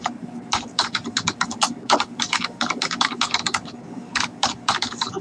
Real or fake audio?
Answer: fake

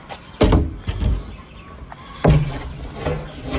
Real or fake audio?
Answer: real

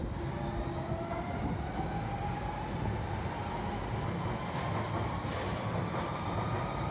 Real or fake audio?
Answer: real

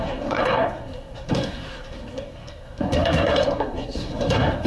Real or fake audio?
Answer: fake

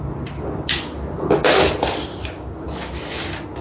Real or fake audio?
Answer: real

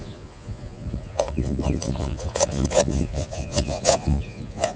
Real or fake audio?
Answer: fake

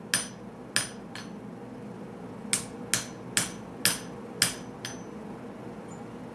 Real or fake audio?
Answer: real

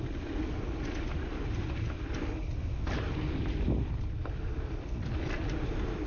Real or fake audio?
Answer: real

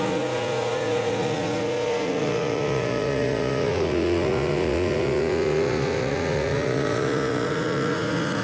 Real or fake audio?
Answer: fake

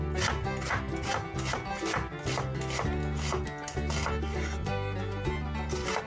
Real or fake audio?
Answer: real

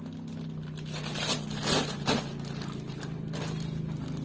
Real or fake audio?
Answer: real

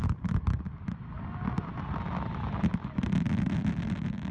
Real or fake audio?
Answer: real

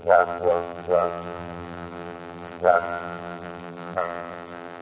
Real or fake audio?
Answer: fake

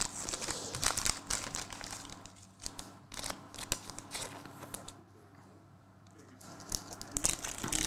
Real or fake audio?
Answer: real